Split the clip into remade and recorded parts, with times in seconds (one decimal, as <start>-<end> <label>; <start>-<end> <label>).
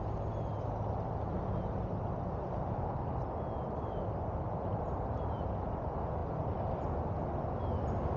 0.0-8.2 recorded